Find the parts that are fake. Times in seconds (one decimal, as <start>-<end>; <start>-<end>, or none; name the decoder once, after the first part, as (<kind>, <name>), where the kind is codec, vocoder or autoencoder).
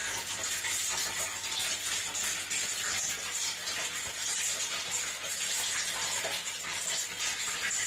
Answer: none